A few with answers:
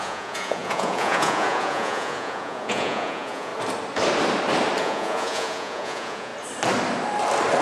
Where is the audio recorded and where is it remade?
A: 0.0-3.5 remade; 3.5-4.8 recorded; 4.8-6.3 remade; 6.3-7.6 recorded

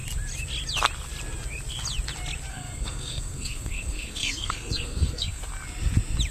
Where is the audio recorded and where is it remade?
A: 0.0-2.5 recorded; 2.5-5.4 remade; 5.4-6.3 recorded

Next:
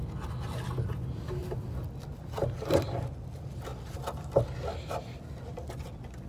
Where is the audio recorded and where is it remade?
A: 0.0-6.3 recorded

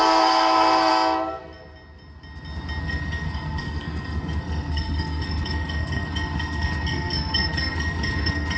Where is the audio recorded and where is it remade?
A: 0.0-0.9 remade; 0.9-2.8 recorded; 2.8-8.6 remade

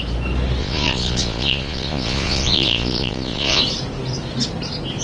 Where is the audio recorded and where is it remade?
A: 0.0-0.6 recorded; 0.6-3.6 remade; 3.6-5.0 recorded

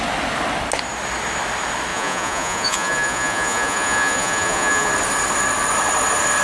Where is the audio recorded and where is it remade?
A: 0.0-1.9 recorded; 1.9-4.9 remade; 4.9-6.4 recorded

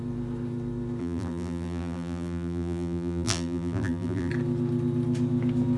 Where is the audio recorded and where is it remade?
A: 0.0-1.0 recorded; 1.0-4.3 remade; 4.3-5.8 recorded

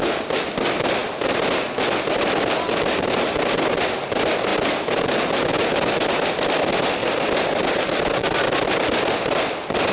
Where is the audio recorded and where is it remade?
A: 0.0-9.9 recorded